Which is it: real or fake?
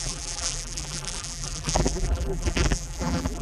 fake